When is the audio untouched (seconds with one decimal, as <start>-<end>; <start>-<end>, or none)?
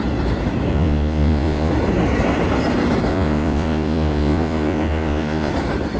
0.0-0.7; 1.7-3.1; 5.5-6.0